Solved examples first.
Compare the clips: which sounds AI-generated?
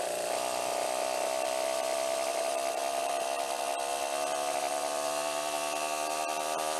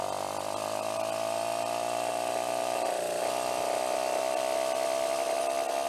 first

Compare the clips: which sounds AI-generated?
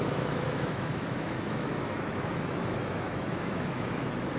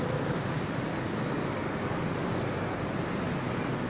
first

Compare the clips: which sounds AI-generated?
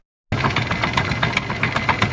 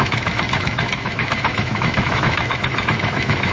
second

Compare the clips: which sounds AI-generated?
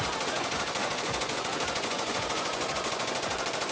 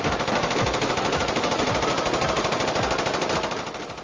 first